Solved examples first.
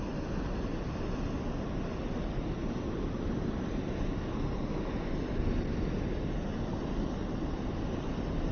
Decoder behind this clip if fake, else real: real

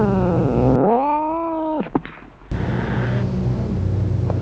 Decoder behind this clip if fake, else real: real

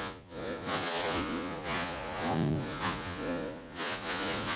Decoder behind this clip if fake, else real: fake, vocoder, Vocos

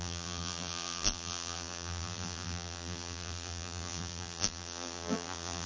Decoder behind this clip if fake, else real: fake, vocoder, BigVGAN v2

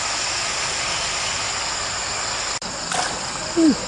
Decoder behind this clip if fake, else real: real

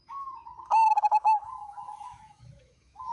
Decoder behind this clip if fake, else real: fake, autoencoder, DAC-VAE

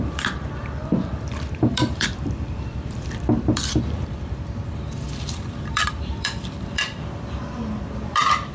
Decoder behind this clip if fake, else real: fake, vocoder, BigVGAN v2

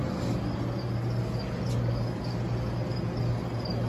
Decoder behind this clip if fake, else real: real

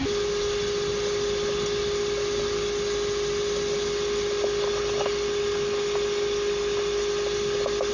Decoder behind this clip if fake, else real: real